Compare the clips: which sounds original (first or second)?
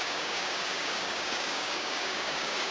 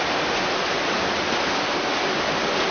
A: second